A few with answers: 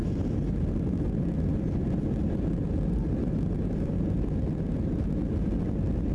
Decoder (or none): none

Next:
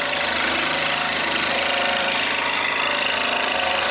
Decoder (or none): vocoder, BigVGAN v2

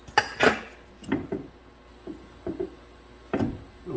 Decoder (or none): none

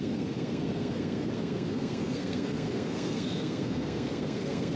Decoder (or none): codec, SNAC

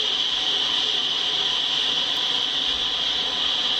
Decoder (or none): none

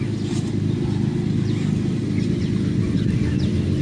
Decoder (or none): none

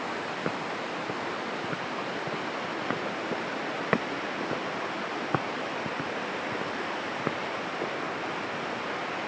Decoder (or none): none